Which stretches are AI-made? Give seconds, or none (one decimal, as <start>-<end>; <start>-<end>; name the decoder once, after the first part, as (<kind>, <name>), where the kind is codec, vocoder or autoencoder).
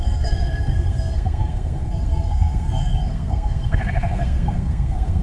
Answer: 0.0-5.2 (codec, SNAC)